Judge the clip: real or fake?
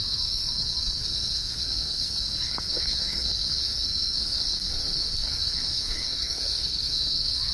fake